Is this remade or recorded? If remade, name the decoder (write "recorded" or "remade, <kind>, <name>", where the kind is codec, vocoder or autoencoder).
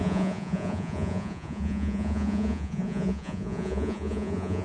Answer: remade, vocoder, Vocos